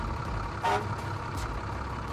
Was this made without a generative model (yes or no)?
yes